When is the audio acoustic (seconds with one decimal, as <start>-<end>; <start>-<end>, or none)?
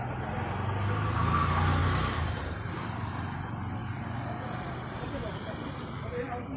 0.0-1.8; 3.1-3.8; 5.7-6.6